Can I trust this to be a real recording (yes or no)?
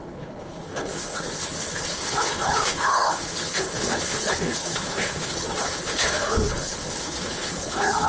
no